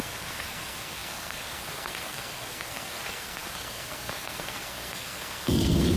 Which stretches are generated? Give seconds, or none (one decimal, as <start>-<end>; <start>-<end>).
0.0-6.0